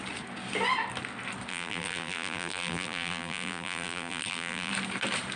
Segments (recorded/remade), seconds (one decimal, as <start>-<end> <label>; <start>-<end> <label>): 0.0-1.5 recorded; 1.5-4.7 remade; 4.7-5.4 recorded